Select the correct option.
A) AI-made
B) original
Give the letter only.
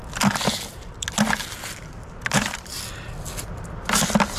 B